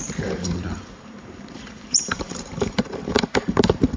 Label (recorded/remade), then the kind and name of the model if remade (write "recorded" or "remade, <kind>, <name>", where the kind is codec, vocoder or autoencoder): remade, vocoder, BigVGAN v2